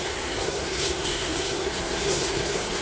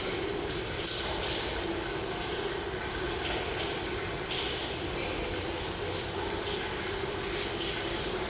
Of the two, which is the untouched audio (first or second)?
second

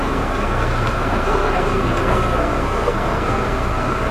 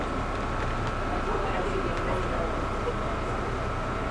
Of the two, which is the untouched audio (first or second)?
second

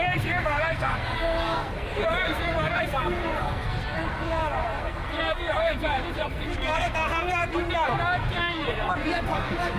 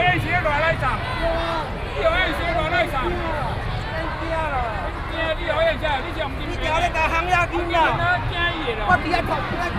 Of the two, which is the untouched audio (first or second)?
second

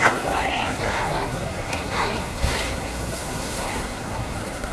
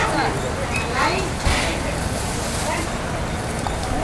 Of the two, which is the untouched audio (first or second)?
second